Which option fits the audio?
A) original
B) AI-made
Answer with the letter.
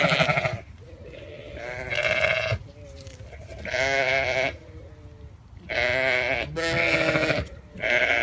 A